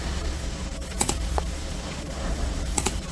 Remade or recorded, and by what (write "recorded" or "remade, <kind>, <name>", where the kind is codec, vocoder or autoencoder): remade, vocoder, Vocos